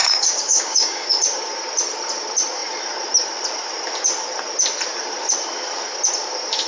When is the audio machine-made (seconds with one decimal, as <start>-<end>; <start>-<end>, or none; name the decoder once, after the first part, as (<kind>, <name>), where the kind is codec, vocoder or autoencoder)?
0.0-1.1 (codec, DAC)